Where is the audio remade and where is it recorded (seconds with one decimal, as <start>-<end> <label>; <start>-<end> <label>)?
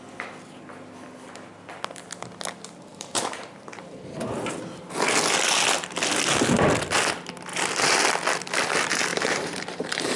0.0-2.9 recorded; 2.9-4.2 remade; 4.2-9.1 recorded; 9.1-10.2 remade